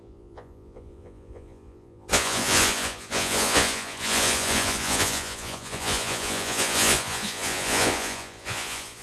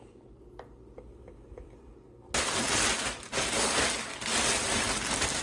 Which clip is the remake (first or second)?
first